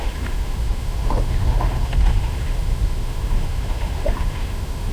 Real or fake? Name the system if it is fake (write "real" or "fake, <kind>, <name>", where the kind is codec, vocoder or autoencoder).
fake, autoencoder, DAC-VAE